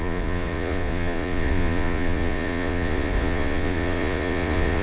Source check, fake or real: fake